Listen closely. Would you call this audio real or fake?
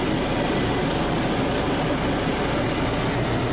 real